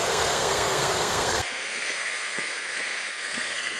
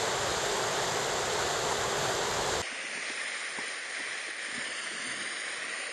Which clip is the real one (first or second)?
second